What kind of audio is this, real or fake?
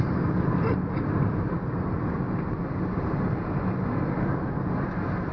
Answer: real